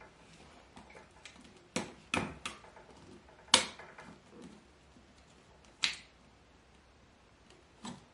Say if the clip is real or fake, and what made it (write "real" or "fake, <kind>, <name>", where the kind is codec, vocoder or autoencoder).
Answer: real